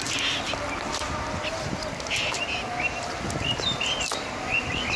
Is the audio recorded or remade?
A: recorded